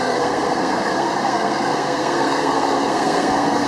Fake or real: fake